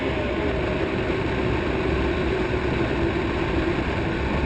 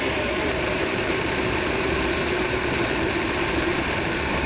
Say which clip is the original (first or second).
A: first